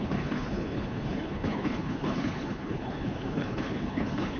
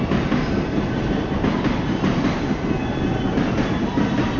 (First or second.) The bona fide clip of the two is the second